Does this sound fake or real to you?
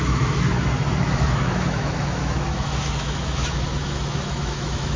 fake